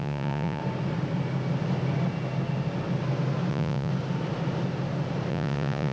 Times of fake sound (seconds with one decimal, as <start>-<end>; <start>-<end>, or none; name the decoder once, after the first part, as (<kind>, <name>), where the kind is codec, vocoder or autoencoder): 0.0-0.6 (vocoder, Vocos); 3.5-3.9; 5.3-5.9